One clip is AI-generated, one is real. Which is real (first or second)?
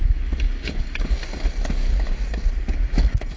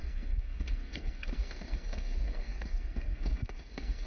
first